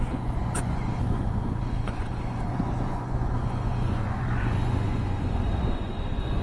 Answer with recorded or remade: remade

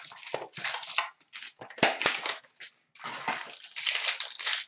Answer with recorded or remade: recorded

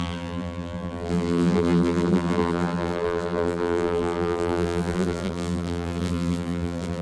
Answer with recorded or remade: remade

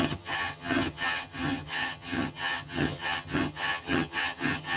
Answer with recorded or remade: remade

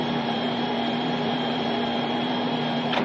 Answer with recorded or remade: remade